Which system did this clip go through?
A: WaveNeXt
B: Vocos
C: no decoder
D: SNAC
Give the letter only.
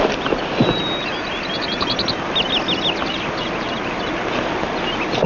C